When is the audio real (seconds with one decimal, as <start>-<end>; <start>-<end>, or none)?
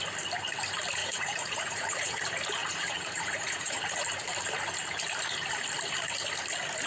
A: 0.0-1.0; 2.2-2.6; 4.0-6.9